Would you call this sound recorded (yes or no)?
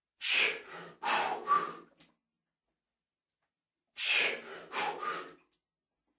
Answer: yes